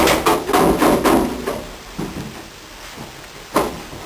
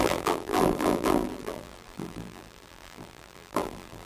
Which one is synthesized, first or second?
second